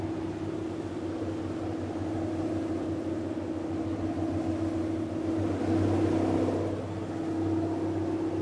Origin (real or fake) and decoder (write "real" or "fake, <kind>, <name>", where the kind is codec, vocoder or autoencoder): real